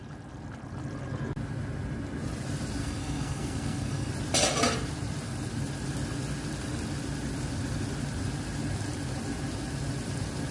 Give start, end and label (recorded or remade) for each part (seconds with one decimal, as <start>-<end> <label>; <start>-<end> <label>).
0.0-2.8 recorded; 2.8-4.1 remade; 4.1-10.5 recorded